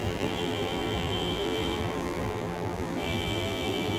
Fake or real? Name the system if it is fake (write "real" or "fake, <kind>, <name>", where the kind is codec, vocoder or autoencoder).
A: fake, vocoder, BigVGAN v2